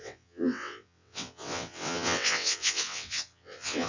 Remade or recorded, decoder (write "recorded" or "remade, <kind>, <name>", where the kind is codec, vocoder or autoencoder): remade, vocoder, WaveNeXt